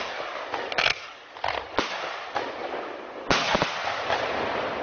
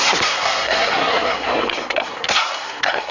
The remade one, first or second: second